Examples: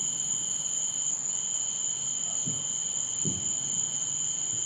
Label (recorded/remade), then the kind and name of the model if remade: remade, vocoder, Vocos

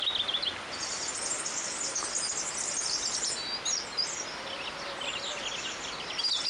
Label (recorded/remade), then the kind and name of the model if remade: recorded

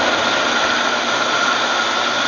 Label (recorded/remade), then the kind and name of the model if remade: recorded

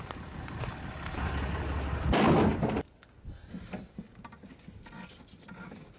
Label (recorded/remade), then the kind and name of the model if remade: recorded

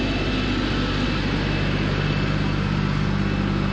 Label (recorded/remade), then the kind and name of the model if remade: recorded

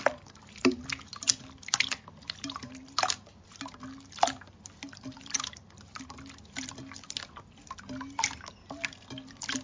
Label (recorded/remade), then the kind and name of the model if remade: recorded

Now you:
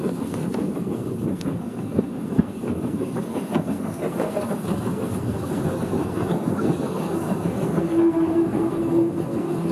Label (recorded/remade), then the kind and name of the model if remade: remade, codec, SNAC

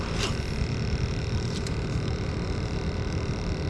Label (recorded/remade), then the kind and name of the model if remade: remade, vocoder, BigVGAN v2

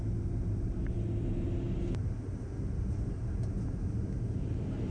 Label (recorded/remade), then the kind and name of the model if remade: recorded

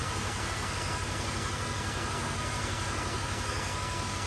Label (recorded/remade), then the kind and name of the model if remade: remade, codec, SNAC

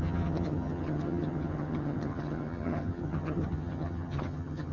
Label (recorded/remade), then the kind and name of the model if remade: remade, vocoder, HiFi-GAN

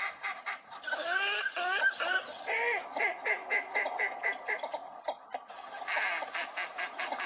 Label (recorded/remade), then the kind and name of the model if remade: recorded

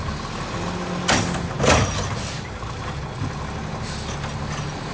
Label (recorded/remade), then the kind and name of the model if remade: recorded